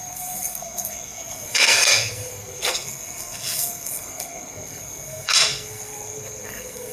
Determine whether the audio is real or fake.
fake